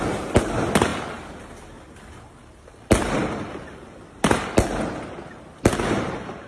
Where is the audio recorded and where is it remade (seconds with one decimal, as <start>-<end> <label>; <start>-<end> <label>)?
0.0-6.5 recorded